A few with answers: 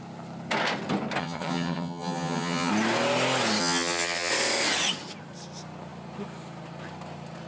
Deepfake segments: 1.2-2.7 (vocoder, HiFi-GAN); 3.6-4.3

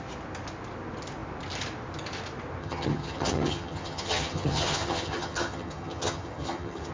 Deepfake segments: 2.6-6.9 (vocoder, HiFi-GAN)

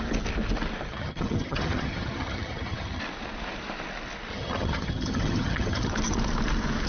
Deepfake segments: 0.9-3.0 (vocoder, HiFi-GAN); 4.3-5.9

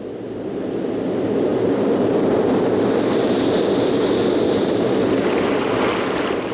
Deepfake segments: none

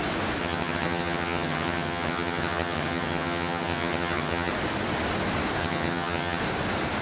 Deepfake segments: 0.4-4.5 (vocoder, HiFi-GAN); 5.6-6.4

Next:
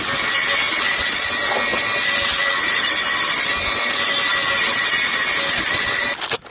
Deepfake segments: none

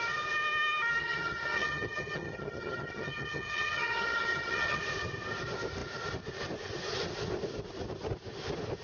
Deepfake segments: 1.0-4.8 (vocoder, HiFi-GAN)